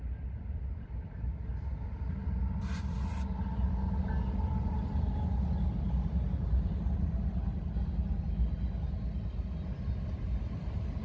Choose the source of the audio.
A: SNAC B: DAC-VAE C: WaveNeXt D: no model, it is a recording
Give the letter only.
D